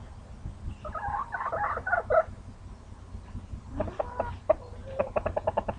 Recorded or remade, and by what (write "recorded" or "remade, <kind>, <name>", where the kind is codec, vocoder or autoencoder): recorded